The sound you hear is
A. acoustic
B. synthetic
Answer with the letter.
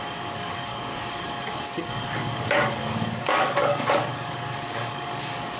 B